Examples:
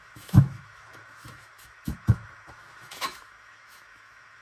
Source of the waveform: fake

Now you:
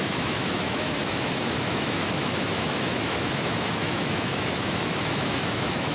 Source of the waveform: fake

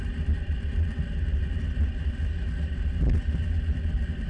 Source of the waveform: real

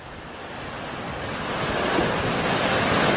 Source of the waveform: real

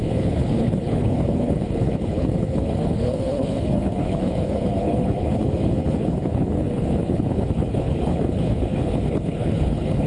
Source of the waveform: fake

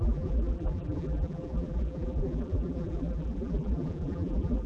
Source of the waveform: fake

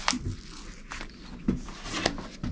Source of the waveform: real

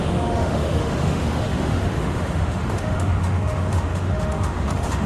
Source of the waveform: fake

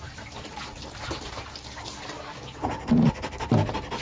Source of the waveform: real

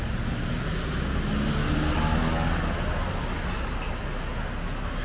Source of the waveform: real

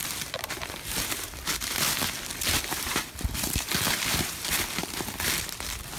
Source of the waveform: fake